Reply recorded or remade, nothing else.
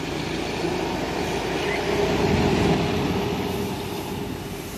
recorded